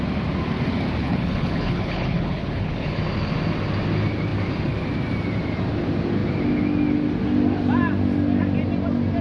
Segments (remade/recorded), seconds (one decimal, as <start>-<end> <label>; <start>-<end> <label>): 0.0-1.0 recorded; 1.0-3.0 remade; 3.0-9.2 recorded